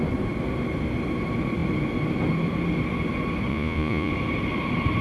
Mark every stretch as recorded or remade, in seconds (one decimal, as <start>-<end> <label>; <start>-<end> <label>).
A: 0.0-3.5 recorded; 3.5-4.1 remade; 4.1-5.0 recorded